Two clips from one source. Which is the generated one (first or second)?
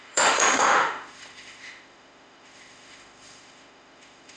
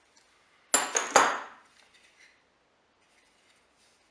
first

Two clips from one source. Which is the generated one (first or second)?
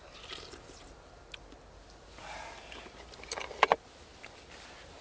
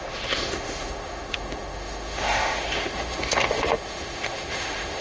second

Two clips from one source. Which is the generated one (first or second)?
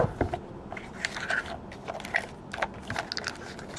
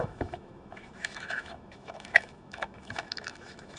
second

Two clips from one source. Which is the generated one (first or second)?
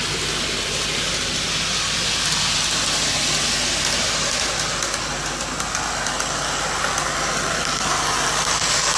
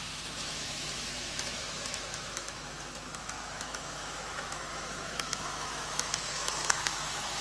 second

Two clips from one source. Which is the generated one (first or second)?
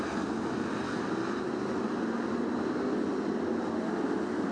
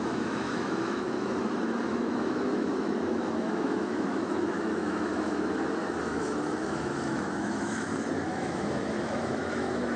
second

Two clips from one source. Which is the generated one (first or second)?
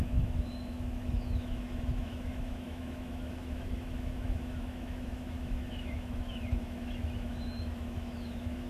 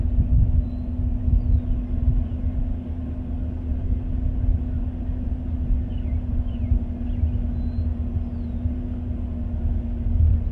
first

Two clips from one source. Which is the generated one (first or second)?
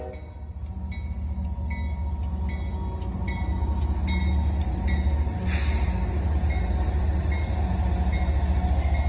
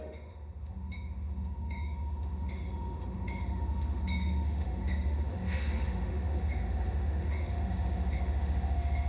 second